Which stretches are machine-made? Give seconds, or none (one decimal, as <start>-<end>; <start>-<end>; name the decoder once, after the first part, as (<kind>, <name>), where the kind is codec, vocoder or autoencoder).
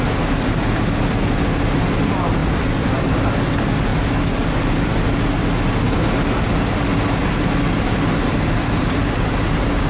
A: 2.4-3.2 (vocoder, BigVGAN v2); 3.9-5.7